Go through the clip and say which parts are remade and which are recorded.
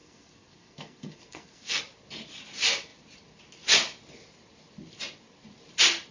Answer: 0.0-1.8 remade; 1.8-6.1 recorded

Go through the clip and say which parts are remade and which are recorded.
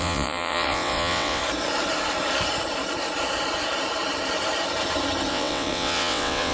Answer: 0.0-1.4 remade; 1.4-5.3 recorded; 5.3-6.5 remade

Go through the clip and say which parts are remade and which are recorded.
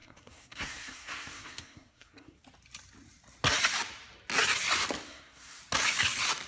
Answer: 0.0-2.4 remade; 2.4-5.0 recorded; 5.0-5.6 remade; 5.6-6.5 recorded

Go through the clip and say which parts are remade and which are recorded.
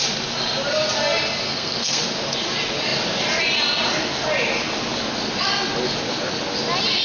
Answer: 0.0-1.5 recorded; 1.5-2.0 remade; 2.0-7.0 recorded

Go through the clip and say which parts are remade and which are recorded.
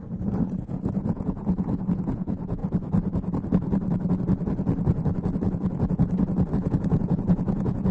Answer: 0.0-2.6 remade; 2.6-6.5 recorded; 6.5-7.9 remade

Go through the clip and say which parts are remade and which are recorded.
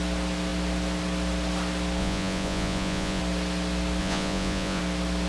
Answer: 0.0-2.0 recorded; 2.0-3.2 remade; 3.2-4.0 recorded; 4.0-4.8 remade; 4.8-5.3 recorded